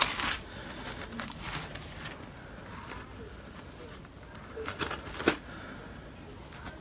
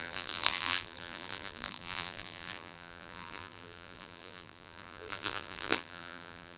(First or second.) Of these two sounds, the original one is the first